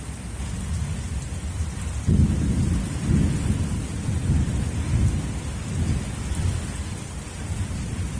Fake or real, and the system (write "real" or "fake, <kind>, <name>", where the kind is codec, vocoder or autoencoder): real